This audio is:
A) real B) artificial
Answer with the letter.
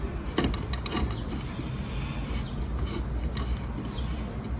A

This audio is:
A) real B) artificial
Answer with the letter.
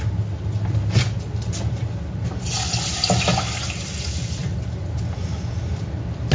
A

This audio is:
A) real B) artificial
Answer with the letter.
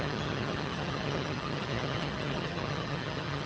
B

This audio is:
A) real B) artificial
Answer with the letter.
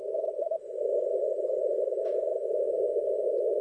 A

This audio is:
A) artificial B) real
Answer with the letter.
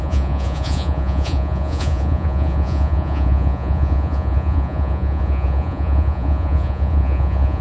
A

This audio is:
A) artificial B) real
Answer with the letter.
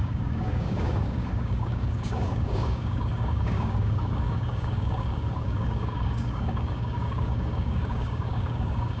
A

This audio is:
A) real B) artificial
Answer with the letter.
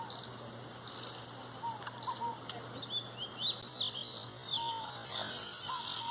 A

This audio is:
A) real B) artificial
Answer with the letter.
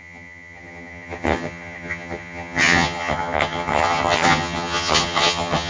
B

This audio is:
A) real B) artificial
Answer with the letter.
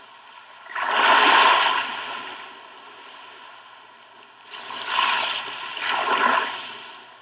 A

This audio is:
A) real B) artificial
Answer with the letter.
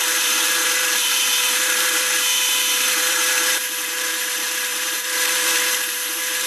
B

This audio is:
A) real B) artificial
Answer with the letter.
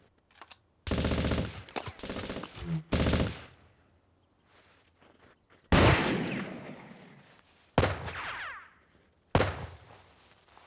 A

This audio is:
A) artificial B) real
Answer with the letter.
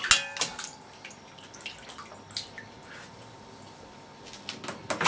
B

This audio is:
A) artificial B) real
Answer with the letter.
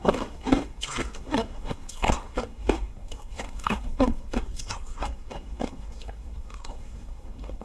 A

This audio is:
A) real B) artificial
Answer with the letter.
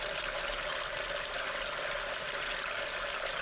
A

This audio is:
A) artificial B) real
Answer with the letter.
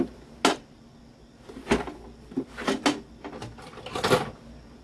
B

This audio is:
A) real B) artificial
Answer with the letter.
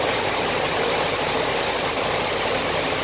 A